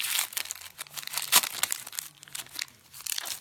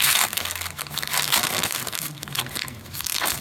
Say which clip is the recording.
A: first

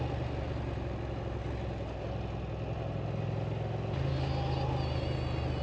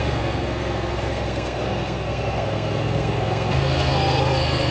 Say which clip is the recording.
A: first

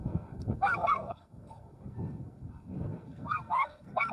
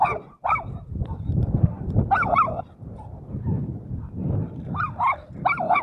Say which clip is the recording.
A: second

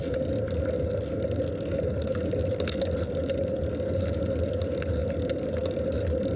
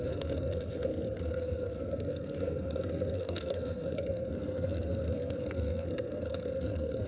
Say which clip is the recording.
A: first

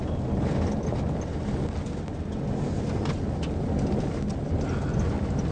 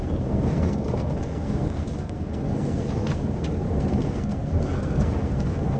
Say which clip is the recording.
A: first